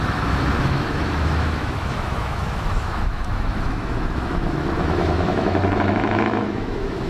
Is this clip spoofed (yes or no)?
yes